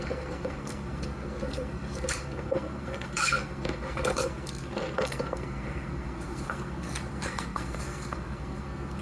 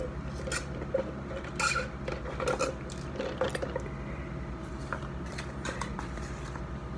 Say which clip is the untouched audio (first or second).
second